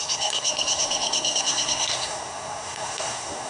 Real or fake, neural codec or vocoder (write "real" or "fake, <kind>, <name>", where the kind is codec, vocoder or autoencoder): fake, codec, SNAC